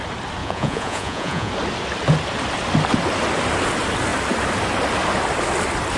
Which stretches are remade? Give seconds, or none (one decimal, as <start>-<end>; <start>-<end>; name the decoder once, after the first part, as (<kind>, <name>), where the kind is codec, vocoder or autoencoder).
0.4-1.5 (vocoder, Vocos)